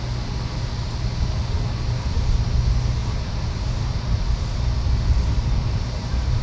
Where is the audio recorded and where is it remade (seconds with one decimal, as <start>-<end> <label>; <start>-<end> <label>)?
0.0-3.0 recorded; 3.0-4.2 remade; 4.2-5.6 recorded; 5.6-6.4 remade